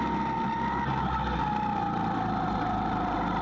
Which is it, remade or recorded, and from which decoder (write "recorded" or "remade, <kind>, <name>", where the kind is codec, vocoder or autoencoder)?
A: recorded